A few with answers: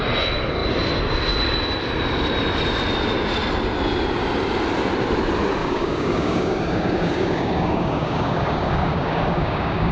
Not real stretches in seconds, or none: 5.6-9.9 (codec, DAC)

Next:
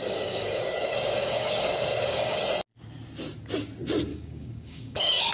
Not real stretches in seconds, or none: 0.0-2.4 (codec, DAC); 4.1-5.3

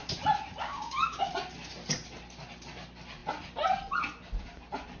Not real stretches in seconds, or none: 0.6-1.3 (codec, DAC)

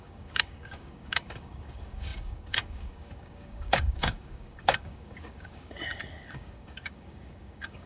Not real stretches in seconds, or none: 0.0-7.9 (codec, DAC)

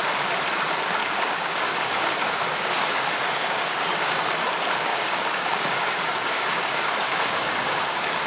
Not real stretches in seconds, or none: 1.0-4.2 (codec, DAC); 4.9-8.3